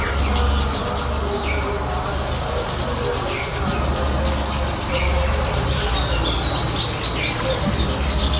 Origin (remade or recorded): recorded